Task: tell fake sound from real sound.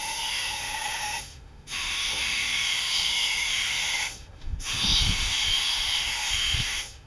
fake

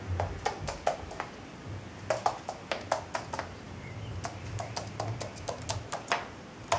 real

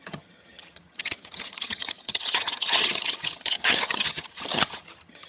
fake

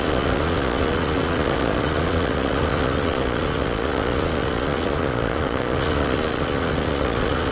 fake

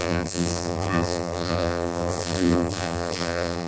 fake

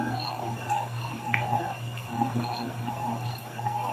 fake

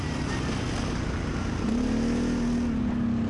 real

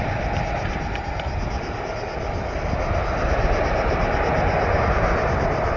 real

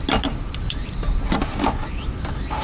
real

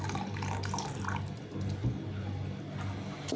real